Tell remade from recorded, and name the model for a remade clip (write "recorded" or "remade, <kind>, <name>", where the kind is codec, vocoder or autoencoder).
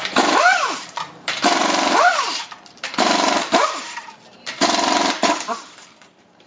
remade, vocoder, BigVGAN v2